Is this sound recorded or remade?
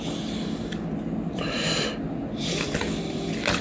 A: recorded